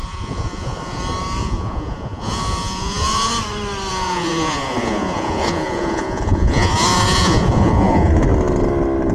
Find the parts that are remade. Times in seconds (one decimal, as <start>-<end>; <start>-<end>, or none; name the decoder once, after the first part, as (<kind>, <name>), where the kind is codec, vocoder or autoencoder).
0.0-1.0 (vocoder, Vocos); 1.4-3.3; 3.9-8.1